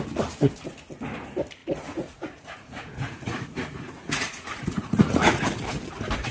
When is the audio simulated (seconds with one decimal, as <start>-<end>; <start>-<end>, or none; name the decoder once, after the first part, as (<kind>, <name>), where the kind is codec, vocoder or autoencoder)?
1.6-5.4 (vocoder, Vocos)